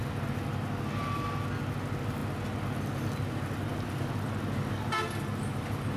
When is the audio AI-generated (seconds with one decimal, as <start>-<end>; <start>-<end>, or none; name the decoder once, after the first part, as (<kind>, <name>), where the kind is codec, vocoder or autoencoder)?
none